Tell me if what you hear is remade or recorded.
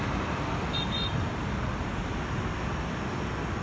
recorded